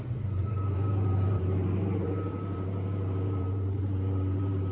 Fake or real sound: fake